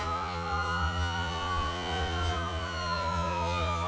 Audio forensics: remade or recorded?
remade